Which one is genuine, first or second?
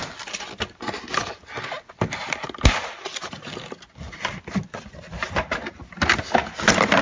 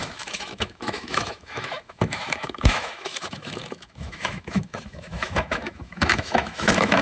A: first